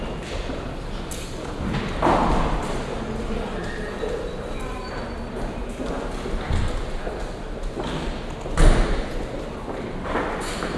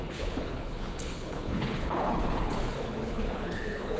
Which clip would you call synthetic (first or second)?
second